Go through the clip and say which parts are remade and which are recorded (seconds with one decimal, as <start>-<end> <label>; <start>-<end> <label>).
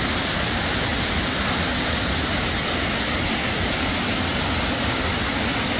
0.0-5.8 recorded